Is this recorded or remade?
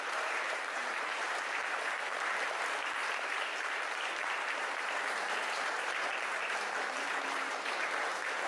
remade